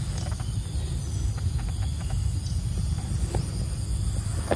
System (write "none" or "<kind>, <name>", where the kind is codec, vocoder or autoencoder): none